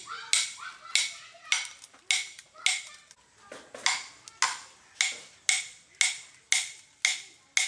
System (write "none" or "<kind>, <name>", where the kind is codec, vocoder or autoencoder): none